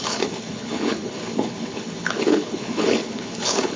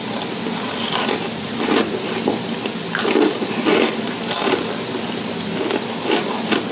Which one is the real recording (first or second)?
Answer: second